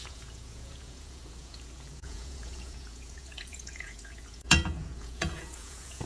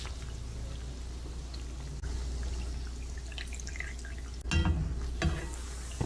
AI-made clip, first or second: first